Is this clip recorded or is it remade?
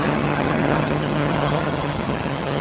remade